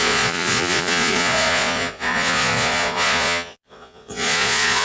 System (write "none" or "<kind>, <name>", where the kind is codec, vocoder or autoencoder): vocoder, Vocos